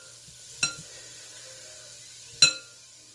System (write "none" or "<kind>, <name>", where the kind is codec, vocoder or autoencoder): none